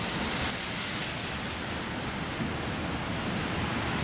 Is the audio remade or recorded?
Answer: recorded